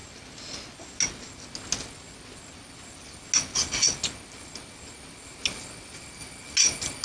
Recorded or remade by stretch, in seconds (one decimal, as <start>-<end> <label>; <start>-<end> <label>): 0.0-7.0 recorded